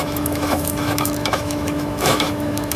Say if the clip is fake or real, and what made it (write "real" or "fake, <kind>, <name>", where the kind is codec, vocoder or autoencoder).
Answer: fake, autoencoder, DAC-VAE